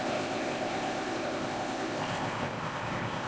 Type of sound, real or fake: fake